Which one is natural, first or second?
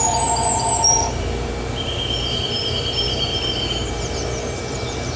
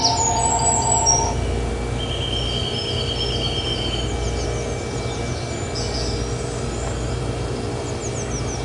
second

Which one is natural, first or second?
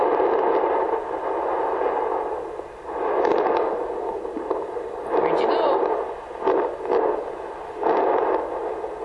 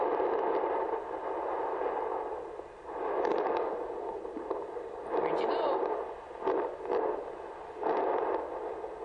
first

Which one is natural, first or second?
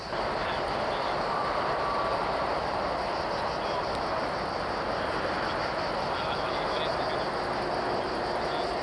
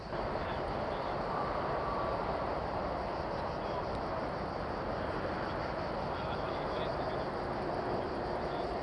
first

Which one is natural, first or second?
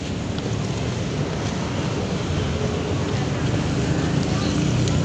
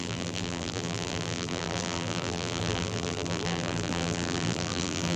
first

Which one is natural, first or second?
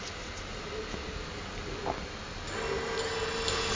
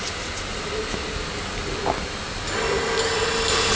first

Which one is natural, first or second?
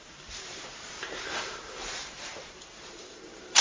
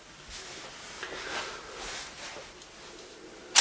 second